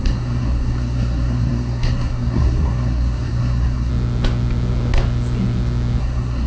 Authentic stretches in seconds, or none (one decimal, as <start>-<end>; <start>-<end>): 3.9-6.0